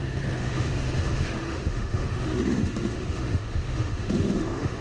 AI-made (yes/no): yes